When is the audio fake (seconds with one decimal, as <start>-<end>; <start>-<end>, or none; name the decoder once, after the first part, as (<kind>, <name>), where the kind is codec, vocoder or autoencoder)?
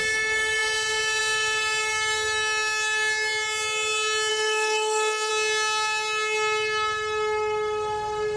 4.3-5.3 (codec, SNAC)